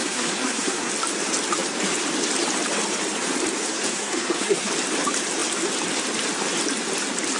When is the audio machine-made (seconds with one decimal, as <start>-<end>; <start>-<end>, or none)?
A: 0.0-0.9; 3.9-4.7

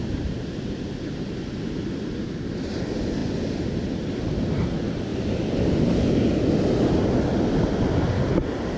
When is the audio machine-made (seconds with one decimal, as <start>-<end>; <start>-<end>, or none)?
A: none